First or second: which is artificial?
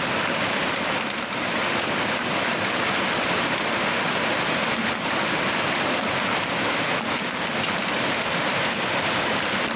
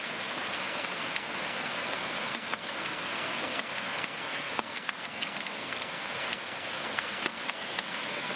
second